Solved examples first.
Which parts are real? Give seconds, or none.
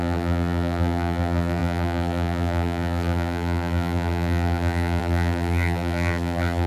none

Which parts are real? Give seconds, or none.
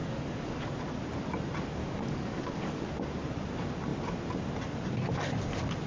0.7-1.8; 2.9-5.9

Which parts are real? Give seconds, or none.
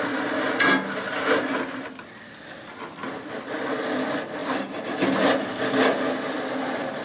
0.0-7.0